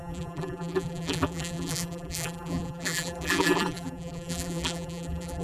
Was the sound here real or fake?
fake